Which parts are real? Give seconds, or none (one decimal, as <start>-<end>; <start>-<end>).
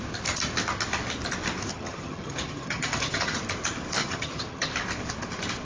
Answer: 0.0-1.7; 3.4-4.0; 4.7-5.6